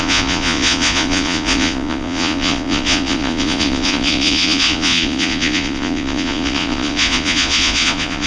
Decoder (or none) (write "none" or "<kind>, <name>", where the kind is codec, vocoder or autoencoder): vocoder, Vocos